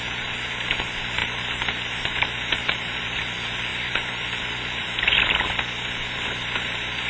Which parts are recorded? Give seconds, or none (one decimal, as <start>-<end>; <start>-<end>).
none